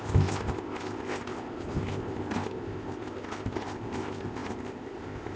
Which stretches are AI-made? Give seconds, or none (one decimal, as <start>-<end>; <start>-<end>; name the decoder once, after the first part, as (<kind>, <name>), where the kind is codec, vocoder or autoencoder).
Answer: 0.0-5.4 (codec, ZipCodec)